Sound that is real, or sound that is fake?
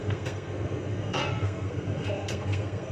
fake